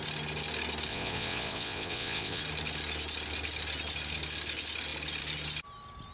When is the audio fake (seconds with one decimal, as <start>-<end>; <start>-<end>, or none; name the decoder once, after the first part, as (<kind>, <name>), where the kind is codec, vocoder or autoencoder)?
0.9-2.4 (vocoder, WaveNeXt)